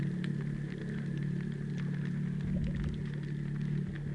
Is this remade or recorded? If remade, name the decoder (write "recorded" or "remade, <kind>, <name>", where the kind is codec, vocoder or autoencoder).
recorded